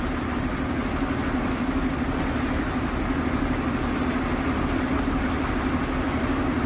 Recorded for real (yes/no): no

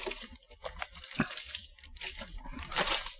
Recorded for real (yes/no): no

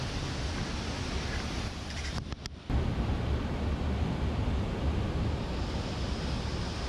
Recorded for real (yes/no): yes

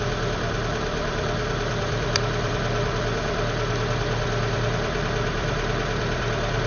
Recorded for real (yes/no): no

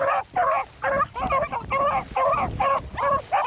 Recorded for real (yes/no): yes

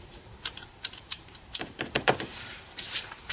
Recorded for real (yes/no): no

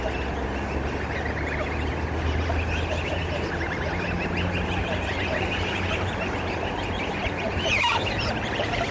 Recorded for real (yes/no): no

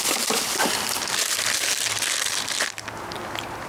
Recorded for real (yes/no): yes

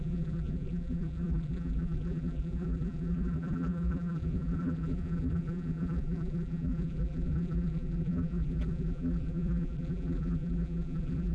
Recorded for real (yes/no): no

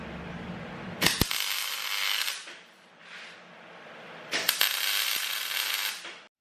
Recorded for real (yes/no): yes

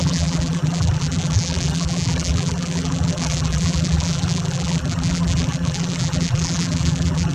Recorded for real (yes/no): no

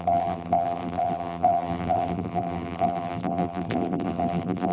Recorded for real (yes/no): no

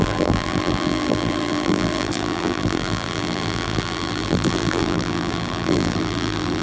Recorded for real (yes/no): no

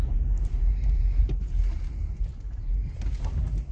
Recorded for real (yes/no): no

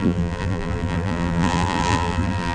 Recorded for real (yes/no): no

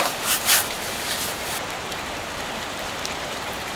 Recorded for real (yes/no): no